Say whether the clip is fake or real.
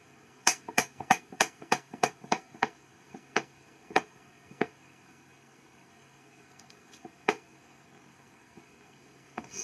fake